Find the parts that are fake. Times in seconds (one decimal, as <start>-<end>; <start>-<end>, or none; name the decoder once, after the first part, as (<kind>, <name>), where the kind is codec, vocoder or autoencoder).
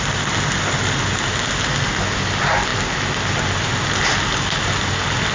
none